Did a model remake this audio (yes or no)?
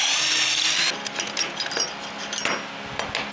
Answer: no